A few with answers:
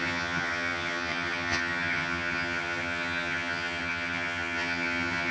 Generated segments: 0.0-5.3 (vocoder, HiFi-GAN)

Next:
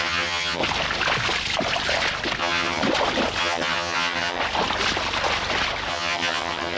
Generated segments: 0.0-0.6 (vocoder, HiFi-GAN); 2.4-2.8; 3.4-4.4; 5.9-6.8